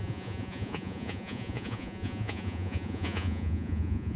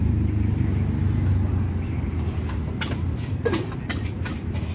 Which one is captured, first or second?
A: second